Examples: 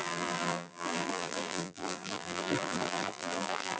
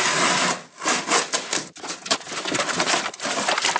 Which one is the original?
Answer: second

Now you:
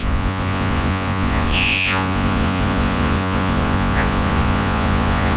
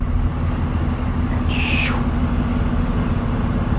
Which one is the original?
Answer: second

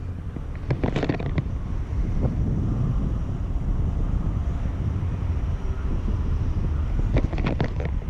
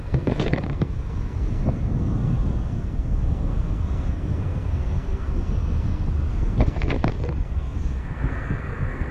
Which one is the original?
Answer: first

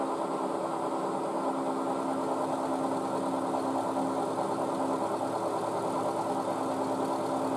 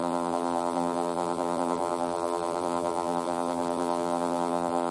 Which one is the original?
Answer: first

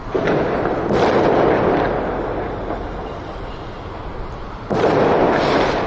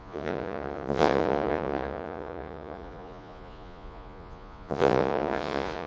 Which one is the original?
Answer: first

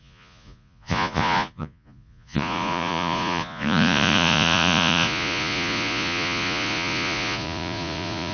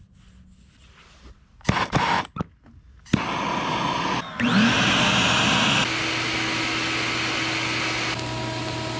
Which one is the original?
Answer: second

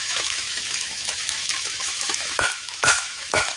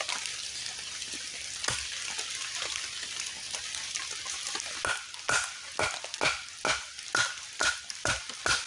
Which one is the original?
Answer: second